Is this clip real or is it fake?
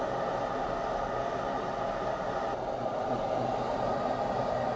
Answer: real